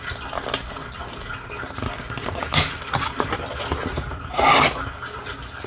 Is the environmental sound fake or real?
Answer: real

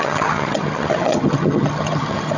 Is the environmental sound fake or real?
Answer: fake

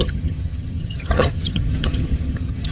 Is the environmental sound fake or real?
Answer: fake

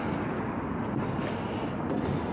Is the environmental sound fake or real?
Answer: real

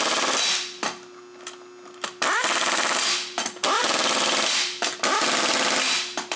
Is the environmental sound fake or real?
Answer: real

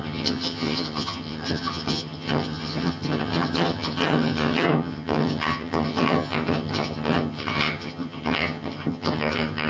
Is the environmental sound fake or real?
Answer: fake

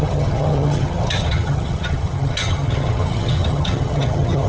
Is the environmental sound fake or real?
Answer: fake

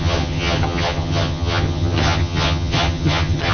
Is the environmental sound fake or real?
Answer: fake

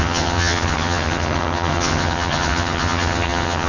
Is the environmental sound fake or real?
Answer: fake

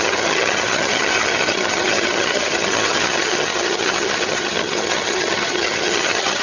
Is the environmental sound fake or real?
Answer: fake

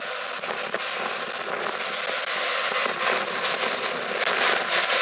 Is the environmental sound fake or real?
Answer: real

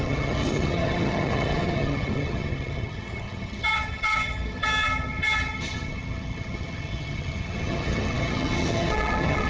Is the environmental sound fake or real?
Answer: fake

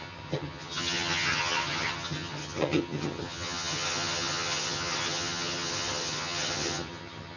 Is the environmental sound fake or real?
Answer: fake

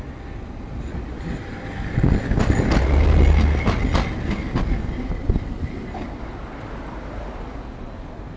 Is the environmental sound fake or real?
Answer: real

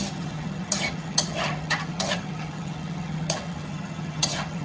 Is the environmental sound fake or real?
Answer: fake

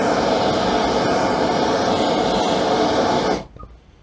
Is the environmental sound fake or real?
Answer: real